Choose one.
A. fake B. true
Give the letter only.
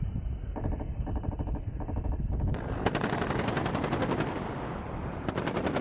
B